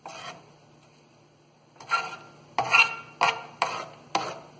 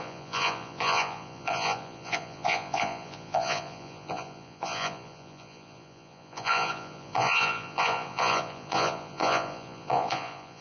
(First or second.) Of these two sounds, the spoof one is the second